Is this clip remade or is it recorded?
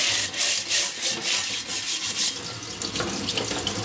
recorded